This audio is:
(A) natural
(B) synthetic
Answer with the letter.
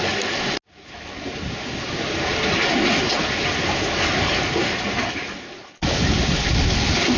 A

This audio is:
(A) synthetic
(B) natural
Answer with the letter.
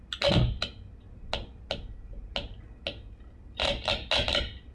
B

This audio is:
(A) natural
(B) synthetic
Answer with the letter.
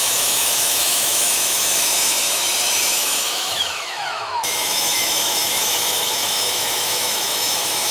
B